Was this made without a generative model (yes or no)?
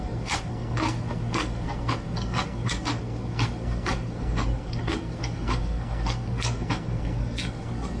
no